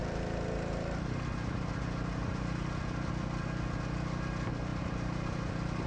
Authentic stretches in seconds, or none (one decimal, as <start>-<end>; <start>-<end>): 3.1-4.7